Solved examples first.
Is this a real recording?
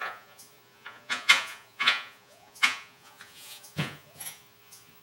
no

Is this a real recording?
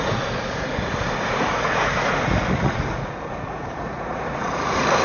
no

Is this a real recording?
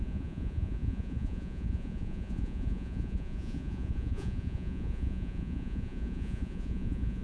no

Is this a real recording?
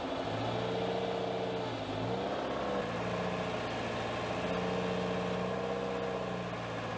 yes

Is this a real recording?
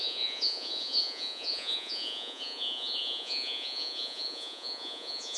no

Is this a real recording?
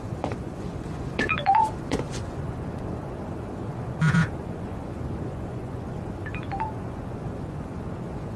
no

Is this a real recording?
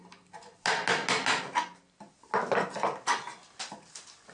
yes